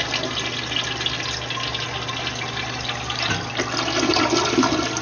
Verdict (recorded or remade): recorded